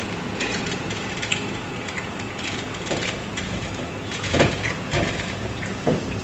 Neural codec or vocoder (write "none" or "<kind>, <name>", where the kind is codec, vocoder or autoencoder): vocoder, Vocos